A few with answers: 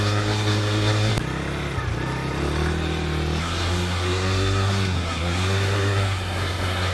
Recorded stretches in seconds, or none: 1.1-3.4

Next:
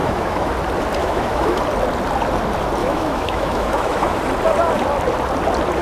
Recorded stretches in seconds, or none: 0.5-1.0; 1.6-2.8; 4.2-5.8

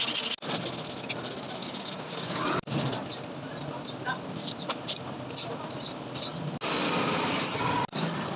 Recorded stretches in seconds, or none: 0.0-1.6; 2.4-8.4

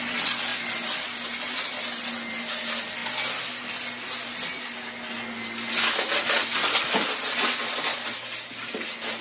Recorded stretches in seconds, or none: 0.0-9.2

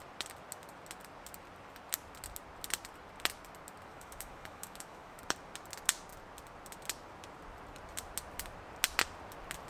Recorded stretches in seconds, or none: 0.0-3.9; 5.2-9.7

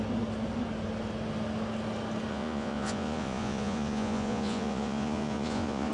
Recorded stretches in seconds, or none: 0.0-2.3

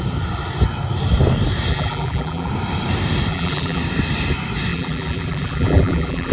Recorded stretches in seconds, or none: 0.0-1.7; 2.5-3.3; 3.8-4.7